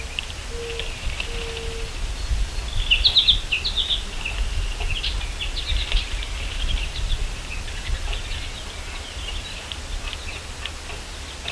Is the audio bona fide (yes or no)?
yes